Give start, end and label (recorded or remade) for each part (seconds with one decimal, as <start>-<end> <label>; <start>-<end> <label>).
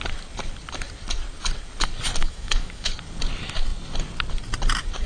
0.0-2.2 recorded; 2.2-2.9 remade; 2.9-5.1 recorded